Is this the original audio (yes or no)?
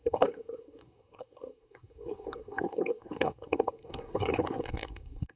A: no